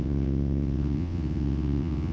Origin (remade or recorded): remade